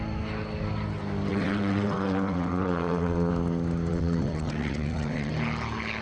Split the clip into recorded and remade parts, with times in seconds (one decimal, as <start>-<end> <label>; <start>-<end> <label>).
0.0-1.3 recorded; 1.3-3.3 remade; 3.3-3.9 recorded; 3.9-5.3 remade; 5.3-6.0 recorded